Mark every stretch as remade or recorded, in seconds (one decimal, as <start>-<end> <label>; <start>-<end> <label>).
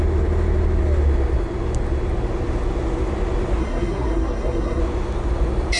0.0-3.6 recorded; 3.6-4.8 remade; 4.8-5.8 recorded